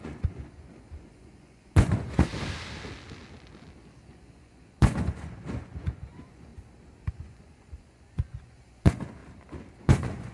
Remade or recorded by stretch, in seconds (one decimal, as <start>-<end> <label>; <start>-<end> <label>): 0.0-2.3 remade; 2.3-4.1 recorded; 4.1-6.5 remade; 6.5-7.1 recorded; 7.1-9.2 remade; 9.2-9.8 recorded; 9.8-10.3 remade